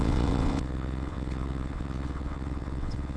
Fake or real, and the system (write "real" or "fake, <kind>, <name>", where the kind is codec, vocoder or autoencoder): fake, vocoder, WaveNeXt